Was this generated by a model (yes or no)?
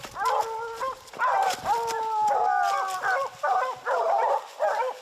no